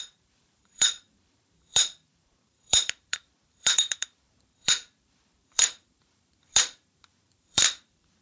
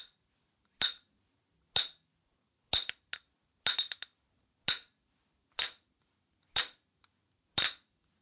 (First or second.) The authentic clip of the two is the second